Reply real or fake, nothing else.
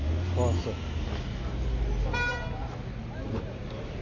real